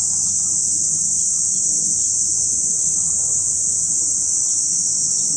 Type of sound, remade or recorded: remade